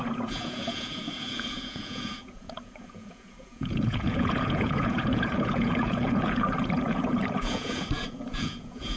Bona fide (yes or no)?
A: no